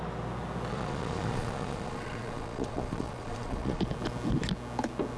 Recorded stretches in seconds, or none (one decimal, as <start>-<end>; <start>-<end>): 0.0-0.7; 3.8-5.2